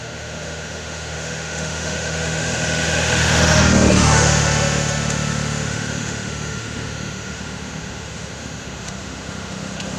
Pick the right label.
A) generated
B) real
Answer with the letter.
A